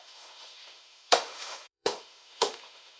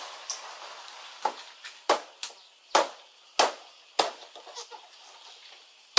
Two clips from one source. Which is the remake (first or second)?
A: first